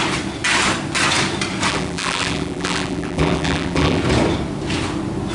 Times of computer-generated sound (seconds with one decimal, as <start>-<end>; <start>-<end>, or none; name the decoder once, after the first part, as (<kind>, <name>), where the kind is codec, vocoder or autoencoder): 1.7-4.0 (vocoder, BigVGAN v2)

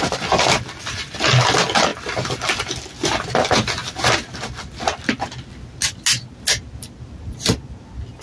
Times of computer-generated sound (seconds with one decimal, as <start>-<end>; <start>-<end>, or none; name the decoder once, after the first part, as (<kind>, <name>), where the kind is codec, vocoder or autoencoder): 1.9-3.1 (vocoder, BigVGAN v2)

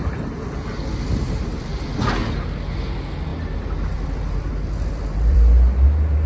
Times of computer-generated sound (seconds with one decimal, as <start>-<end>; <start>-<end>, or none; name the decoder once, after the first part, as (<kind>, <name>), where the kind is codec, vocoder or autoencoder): 1.4-2.2 (vocoder, BigVGAN v2); 2.9-6.3

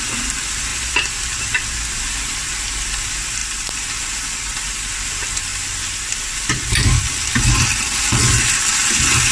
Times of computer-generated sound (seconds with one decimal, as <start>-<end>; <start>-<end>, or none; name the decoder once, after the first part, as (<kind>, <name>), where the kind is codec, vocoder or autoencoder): 5.5-8.0 (vocoder, BigVGAN v2)

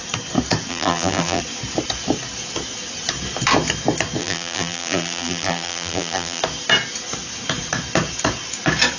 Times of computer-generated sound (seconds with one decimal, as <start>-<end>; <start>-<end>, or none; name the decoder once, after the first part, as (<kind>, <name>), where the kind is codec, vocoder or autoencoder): 0.7-1.4 (vocoder, BigVGAN v2); 4.2-6.4